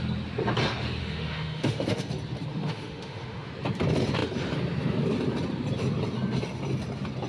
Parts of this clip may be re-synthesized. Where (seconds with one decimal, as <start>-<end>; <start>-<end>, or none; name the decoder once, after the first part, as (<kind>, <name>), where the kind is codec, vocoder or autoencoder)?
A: 1.0-2.1 (autoencoder, DAC-VAE); 2.5-3.5